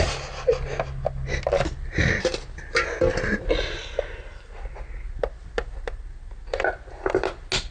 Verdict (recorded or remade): recorded